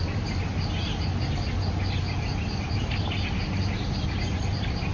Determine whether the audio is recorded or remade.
recorded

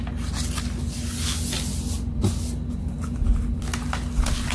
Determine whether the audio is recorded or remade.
recorded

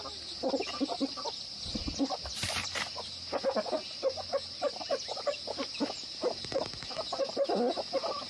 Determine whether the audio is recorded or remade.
recorded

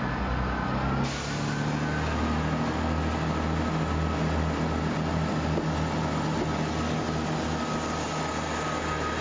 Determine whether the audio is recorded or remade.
recorded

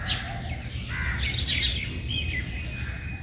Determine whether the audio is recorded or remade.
recorded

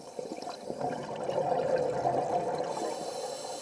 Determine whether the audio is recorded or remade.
recorded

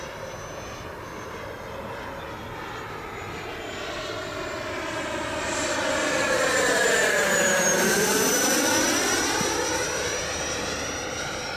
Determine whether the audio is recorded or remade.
recorded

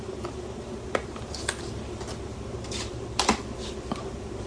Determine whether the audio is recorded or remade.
recorded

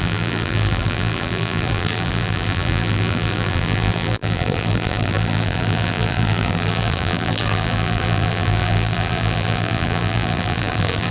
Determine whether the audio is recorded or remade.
remade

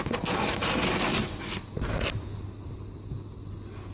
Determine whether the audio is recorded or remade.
recorded